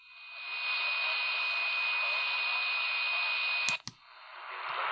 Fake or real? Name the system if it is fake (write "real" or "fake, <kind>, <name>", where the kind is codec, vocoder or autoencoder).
real